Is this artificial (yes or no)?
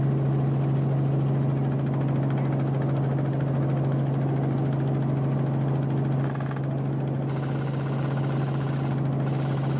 no